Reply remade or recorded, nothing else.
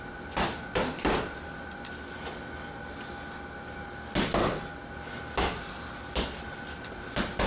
recorded